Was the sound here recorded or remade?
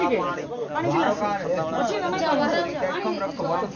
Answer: recorded